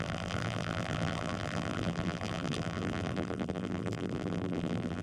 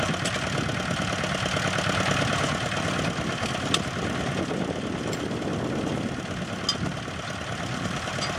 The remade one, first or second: first